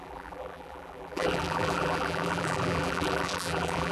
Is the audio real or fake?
fake